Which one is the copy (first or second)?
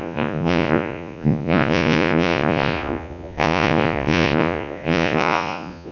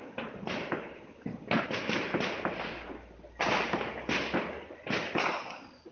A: first